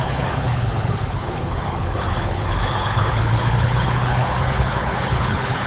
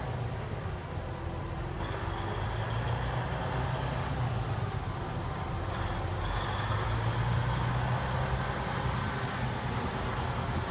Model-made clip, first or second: first